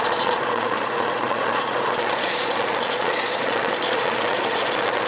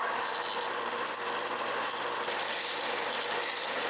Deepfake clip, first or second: first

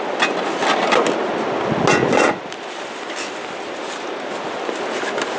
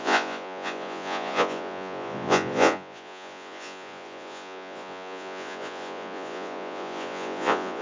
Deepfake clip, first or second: second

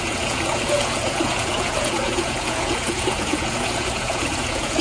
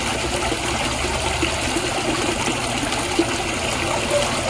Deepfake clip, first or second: first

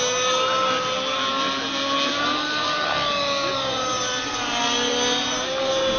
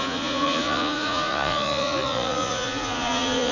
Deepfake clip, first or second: second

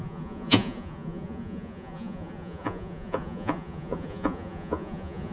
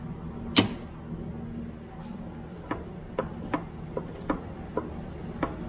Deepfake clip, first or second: first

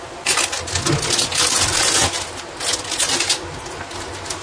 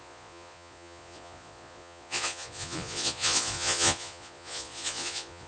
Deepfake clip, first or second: second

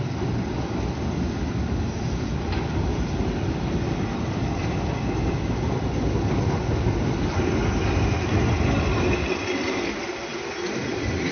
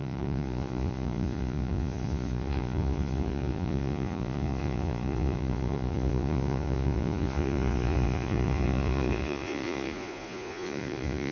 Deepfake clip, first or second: second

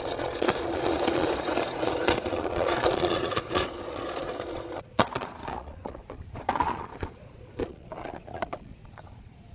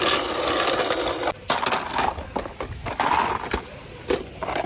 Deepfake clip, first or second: first